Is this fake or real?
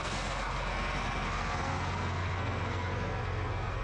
fake